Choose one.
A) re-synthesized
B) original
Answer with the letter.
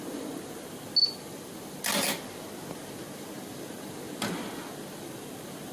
B